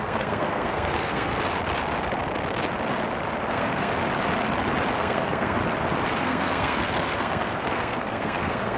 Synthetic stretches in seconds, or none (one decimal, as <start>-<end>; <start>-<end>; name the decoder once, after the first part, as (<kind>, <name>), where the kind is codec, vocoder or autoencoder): 0.0-1.3 (codec, SNAC); 3.5-3.9; 5.0-5.6; 6.2-8.8